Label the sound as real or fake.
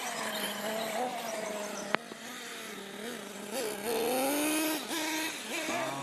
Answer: real